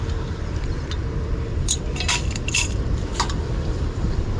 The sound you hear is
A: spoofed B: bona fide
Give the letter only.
A